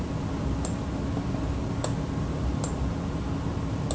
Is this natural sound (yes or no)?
yes